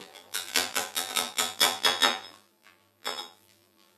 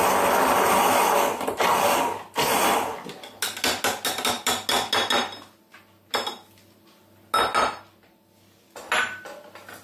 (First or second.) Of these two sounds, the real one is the second